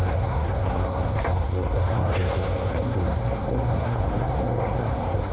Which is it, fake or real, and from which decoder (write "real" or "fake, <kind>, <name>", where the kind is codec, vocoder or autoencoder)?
fake, codec, SNAC